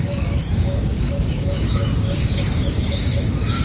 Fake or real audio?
fake